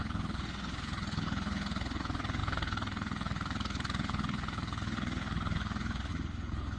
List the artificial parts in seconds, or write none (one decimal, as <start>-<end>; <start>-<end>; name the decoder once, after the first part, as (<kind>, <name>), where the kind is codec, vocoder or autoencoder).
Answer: 0.0-6.8 (codec, HILCodec)

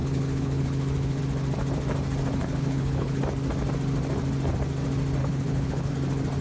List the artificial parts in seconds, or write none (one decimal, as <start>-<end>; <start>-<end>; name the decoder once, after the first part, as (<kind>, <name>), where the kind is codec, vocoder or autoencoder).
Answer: 0.0-1.2 (codec, HILCodec); 2.4-3.2; 5.2-5.9

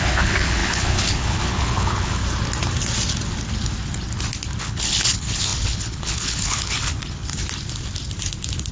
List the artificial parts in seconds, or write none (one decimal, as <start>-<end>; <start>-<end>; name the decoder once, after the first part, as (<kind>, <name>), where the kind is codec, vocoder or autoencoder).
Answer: 0.0-2.2 (codec, HILCodec); 4.6-7.3

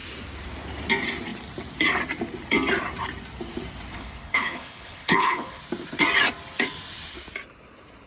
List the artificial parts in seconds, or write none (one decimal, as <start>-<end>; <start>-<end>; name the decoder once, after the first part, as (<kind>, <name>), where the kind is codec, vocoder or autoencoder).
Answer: 3.9-5.6 (codec, HILCodec)

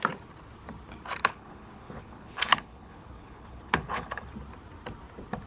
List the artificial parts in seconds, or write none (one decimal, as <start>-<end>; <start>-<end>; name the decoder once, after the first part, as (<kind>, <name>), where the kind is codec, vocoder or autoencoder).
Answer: 1.2-4.3 (codec, HILCodec)

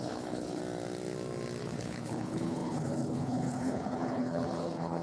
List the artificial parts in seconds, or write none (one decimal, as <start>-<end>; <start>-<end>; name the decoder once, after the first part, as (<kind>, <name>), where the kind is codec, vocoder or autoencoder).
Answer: 0.0-0.6 (codec, HILCodec); 1.6-5.0

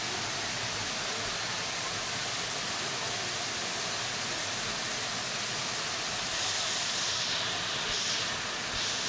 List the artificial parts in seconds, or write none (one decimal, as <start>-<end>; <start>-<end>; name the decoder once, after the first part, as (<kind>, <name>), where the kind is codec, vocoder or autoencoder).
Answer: none

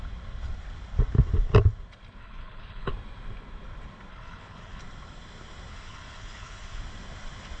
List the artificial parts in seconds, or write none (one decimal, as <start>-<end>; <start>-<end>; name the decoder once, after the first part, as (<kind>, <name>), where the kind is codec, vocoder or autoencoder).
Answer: 2.2-2.9 (codec, HILCodec); 4.1-4.8; 5.7-6.8